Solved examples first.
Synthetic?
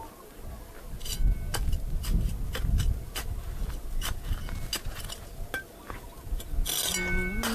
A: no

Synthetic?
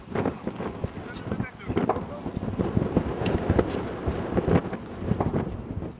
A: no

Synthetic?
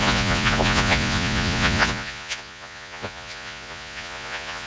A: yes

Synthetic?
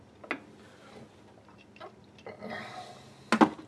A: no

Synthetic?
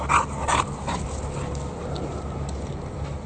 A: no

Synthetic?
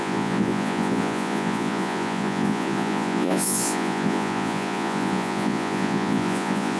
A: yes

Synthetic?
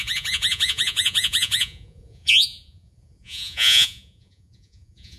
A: yes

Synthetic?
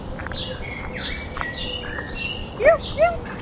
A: no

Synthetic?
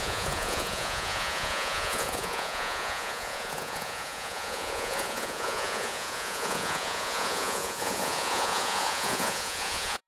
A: yes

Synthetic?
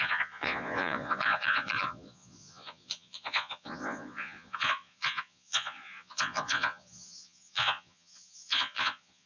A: yes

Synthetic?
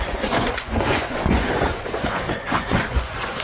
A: yes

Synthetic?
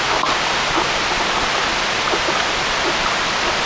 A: no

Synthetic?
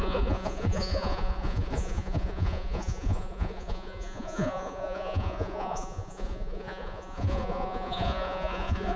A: yes